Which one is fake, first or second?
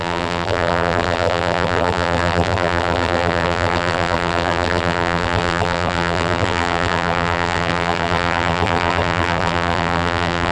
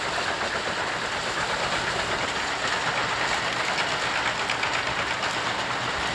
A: first